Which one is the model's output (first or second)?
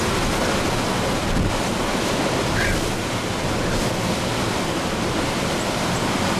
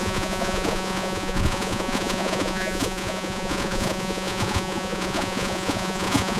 second